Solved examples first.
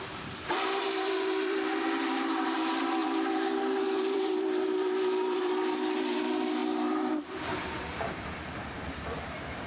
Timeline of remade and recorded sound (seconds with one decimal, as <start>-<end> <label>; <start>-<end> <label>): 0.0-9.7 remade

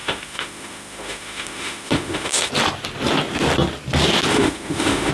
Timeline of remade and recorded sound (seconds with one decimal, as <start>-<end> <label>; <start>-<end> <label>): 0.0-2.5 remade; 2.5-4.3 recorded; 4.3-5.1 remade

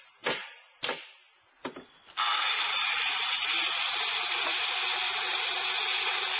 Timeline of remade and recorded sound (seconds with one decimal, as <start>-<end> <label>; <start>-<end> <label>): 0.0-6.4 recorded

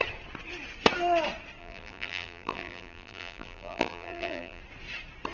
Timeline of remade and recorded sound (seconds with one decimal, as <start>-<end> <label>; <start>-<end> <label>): 0.0-1.6 recorded; 1.6-4.6 remade; 4.6-5.3 recorded

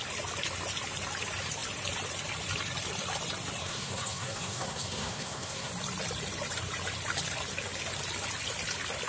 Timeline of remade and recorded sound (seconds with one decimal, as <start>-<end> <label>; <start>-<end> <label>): 0.0-3.6 recorded; 3.6-5.7 remade; 5.7-9.1 recorded